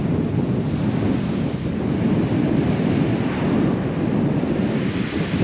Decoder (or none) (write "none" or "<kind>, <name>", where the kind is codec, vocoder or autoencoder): none